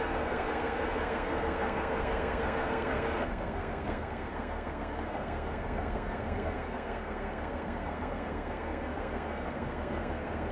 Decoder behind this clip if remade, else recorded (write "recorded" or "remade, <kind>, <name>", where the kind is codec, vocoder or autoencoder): remade, codec, SNAC